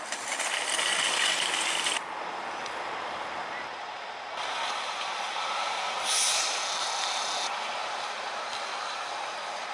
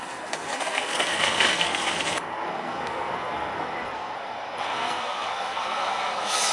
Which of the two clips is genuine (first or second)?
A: first